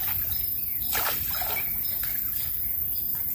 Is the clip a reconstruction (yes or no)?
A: no